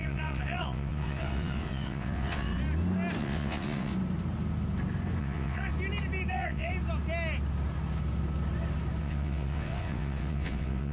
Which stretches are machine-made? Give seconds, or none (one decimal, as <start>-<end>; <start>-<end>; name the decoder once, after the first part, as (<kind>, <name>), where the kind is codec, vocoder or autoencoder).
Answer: 0.0-2.5 (vocoder, WaveNeXt); 3.2-3.9; 5.2-5.7; 6.3-6.7; 9.0-10.9